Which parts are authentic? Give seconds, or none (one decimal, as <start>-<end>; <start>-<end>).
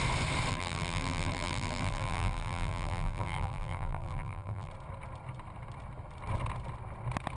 0.0-0.5; 4.7-7.4